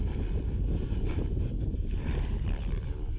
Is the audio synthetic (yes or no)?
yes